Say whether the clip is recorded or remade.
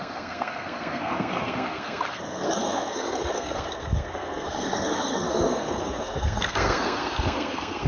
remade